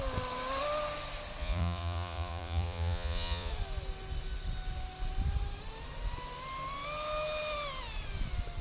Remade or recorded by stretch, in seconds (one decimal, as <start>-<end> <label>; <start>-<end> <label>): 0.0-1.4 recorded; 1.4-3.5 remade; 3.5-8.6 recorded